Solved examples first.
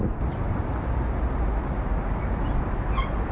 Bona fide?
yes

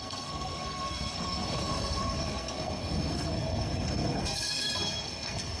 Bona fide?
no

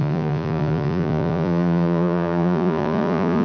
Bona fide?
no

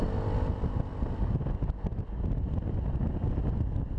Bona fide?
yes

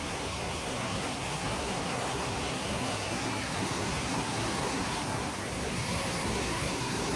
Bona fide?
no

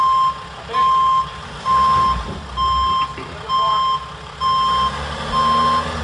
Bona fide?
yes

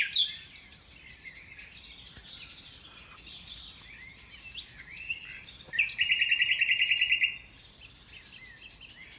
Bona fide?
no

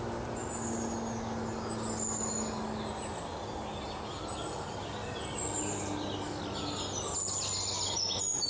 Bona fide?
yes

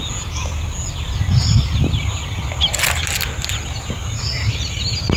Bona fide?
yes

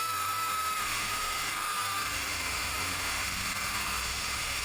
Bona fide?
no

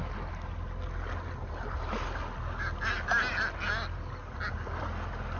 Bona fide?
yes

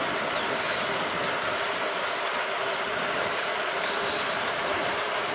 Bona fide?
no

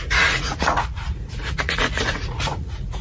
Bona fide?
no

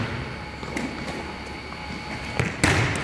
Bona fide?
yes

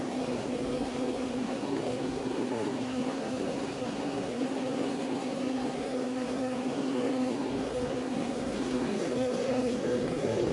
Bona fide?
no